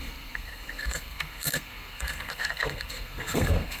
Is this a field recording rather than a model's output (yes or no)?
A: no